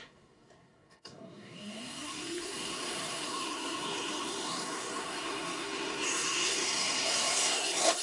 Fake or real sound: fake